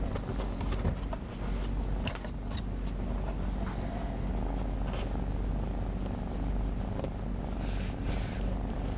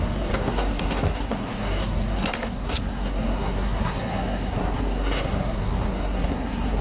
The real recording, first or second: first